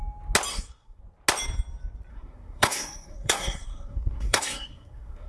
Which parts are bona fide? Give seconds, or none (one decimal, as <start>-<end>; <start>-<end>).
0.0-0.5; 1.0-2.1